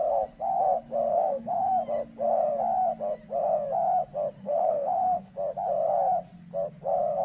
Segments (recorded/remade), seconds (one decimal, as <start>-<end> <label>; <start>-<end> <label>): 0.0-1.1 recorded; 1.1-1.7 remade; 1.7-4.4 recorded; 4.4-5.3 remade; 5.3-7.2 recorded